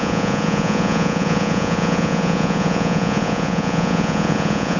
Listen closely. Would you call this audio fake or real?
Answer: fake